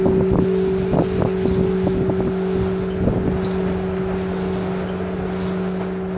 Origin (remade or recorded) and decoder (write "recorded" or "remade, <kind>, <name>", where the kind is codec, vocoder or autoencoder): recorded